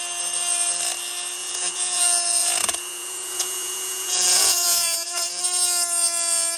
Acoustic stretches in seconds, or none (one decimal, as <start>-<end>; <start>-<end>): 0.0-1.4; 2.0-2.4; 5.4-6.6